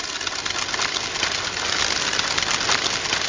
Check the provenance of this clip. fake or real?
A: real